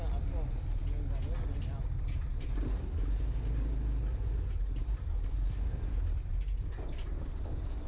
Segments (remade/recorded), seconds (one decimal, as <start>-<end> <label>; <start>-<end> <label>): 0.0-4.8 recorded; 4.8-6.3 remade; 6.3-7.9 recorded